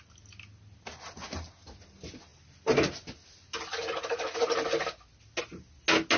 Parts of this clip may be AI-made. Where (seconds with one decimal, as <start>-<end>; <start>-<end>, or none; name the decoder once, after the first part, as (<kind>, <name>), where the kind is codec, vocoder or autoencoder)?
none